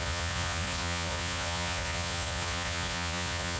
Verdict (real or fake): fake